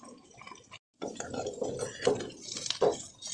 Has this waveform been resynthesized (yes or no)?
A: no